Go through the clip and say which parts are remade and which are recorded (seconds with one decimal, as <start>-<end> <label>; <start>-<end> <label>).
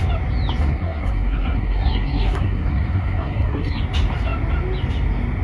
0.0-0.6 recorded; 0.6-3.8 remade; 3.8-5.4 recorded